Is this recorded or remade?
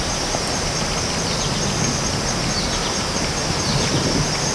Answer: recorded